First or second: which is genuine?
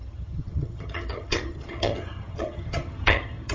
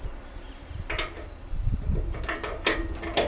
second